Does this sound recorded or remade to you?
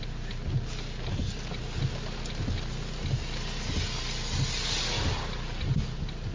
recorded